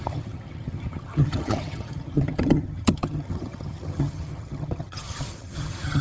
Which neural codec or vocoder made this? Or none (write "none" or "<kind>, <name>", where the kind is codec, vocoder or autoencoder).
vocoder, HiFi-GAN